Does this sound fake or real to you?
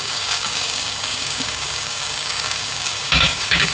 fake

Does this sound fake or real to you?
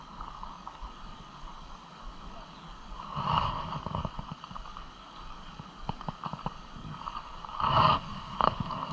fake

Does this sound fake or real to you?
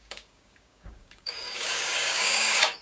fake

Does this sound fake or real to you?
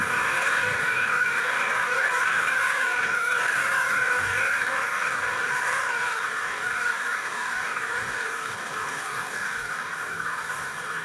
fake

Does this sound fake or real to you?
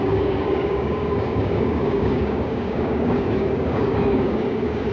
fake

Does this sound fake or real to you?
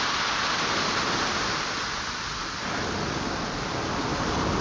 real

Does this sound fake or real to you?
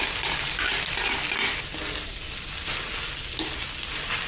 real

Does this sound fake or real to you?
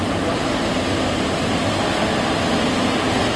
real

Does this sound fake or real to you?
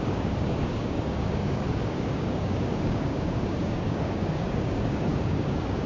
fake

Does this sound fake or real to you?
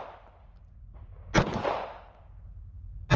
real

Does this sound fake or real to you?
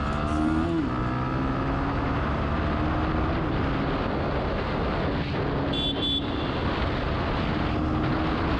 real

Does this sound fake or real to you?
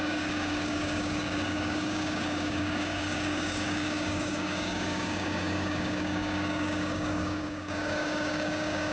fake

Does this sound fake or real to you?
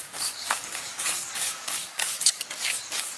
fake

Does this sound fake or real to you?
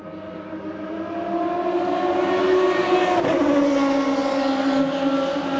real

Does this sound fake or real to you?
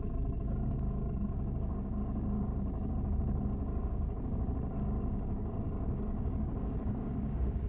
fake